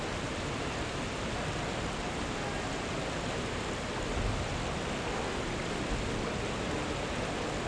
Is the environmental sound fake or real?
real